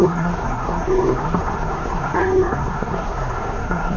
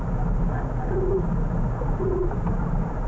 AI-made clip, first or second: first